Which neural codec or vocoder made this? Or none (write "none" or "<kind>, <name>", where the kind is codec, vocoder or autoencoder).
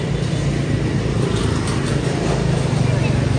none